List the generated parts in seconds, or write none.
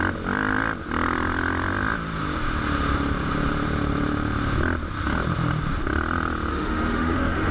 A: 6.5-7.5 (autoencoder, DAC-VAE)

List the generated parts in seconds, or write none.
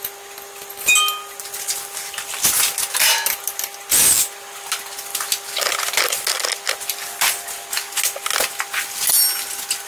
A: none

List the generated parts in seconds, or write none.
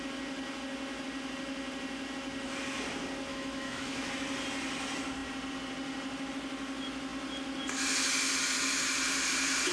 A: 3.3-4.1 (autoencoder, DAC-VAE)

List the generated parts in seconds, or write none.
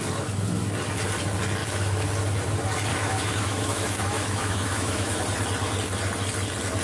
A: 1.6-2.1 (autoencoder, DAC-VAE); 2.9-5.2